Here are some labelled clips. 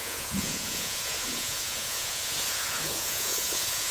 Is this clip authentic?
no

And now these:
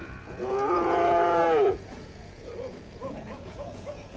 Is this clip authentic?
no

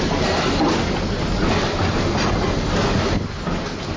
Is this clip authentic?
yes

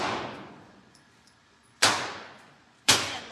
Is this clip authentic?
no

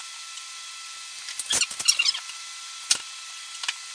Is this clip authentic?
yes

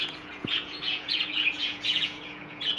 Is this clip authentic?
no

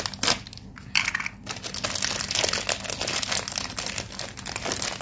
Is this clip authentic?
yes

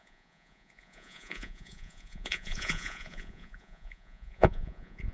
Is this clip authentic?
no